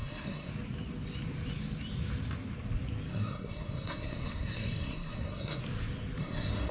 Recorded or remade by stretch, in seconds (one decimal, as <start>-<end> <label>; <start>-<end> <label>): 0.0-0.5 remade; 0.5-3.1 recorded; 3.1-5.6 remade; 5.6-6.2 recorded; 6.2-6.7 remade